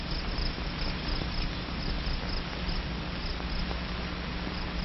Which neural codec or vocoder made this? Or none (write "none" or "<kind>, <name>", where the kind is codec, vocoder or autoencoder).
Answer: none